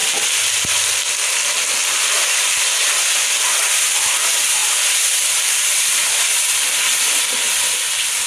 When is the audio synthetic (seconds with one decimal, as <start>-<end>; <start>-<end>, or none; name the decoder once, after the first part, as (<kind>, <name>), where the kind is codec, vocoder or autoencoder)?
none